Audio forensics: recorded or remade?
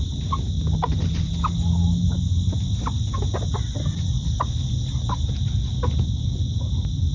recorded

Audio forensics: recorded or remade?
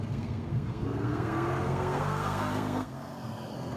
remade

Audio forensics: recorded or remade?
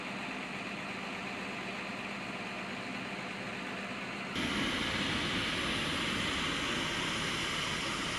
recorded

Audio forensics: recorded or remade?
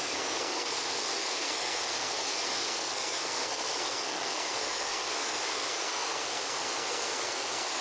remade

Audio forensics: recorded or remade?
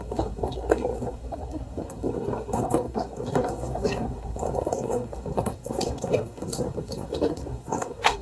remade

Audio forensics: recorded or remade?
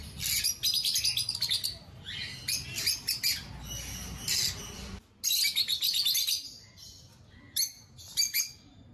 recorded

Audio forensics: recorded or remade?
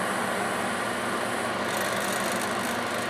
recorded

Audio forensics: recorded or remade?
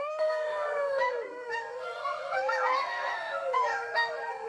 remade